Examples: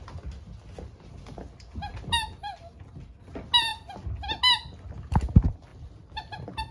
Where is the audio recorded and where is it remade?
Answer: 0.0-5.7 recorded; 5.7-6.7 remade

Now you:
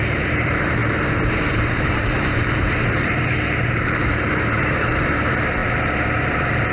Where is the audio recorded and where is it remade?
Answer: 0.0-6.7 remade